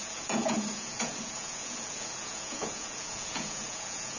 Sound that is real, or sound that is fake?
fake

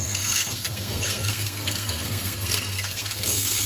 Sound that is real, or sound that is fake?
fake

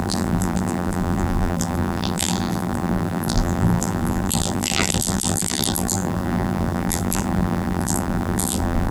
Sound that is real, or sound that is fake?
fake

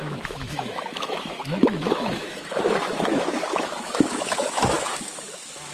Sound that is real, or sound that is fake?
fake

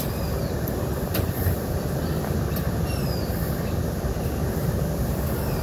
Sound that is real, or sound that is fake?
real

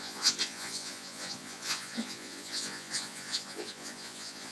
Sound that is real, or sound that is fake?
fake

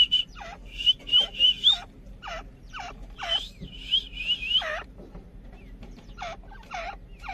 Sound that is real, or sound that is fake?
fake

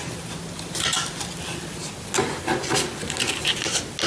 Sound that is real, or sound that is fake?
real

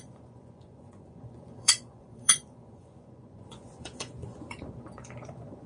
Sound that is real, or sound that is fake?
fake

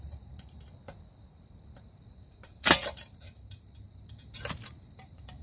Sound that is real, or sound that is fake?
fake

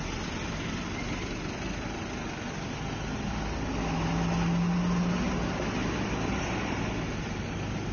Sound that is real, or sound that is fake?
real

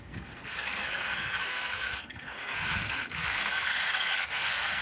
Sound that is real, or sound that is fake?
fake